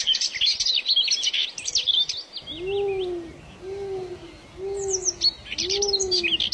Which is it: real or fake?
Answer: real